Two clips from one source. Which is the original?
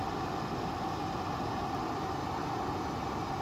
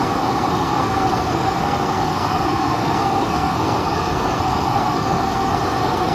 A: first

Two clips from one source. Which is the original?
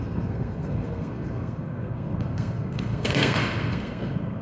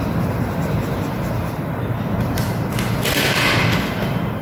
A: second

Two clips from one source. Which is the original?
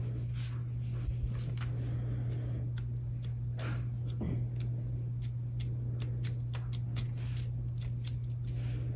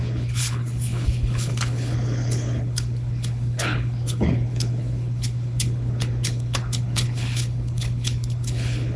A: first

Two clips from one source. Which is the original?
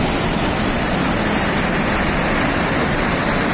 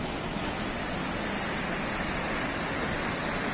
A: second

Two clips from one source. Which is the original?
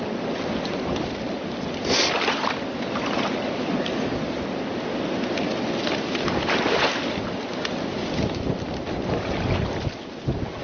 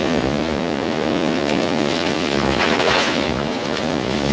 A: first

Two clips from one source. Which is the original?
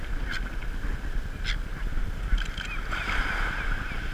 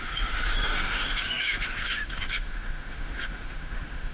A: first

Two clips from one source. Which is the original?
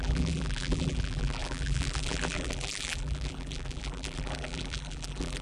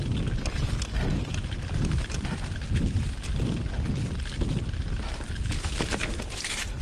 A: second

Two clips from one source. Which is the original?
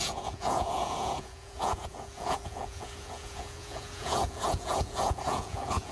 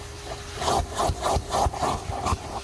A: second